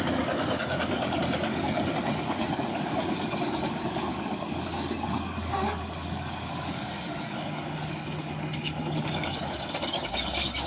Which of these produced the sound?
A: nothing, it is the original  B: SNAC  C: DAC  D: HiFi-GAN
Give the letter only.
C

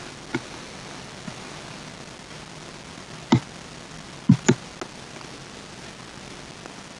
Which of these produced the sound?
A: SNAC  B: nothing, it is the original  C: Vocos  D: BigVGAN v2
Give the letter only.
B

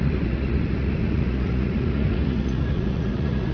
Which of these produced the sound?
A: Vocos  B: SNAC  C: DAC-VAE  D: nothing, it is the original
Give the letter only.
A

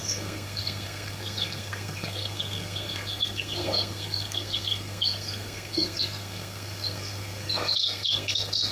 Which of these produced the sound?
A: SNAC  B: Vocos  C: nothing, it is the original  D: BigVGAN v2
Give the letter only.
A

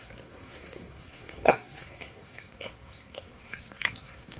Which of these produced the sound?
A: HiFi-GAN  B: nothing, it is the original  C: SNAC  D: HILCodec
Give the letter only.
C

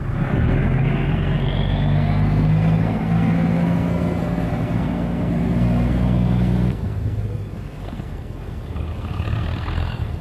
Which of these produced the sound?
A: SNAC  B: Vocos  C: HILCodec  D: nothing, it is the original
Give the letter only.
A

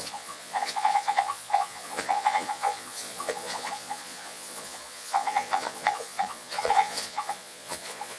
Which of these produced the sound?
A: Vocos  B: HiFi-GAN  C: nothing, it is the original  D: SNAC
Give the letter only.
A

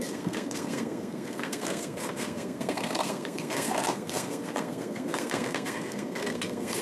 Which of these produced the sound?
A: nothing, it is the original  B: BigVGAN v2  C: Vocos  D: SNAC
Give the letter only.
D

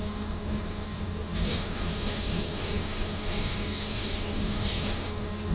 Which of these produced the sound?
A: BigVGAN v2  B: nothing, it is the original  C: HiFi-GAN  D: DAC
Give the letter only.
D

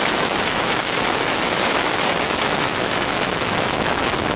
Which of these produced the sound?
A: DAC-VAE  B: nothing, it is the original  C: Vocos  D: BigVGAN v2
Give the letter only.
A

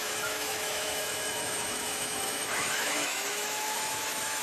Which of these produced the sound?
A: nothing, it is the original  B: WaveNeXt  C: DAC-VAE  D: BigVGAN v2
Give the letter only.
C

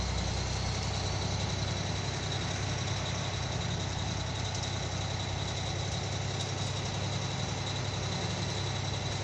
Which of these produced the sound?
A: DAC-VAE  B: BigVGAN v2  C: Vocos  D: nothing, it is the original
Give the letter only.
D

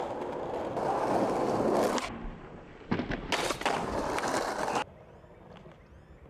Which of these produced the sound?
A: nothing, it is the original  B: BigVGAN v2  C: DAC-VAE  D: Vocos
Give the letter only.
A